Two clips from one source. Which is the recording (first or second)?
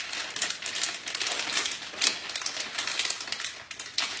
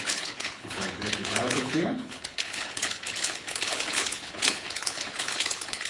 first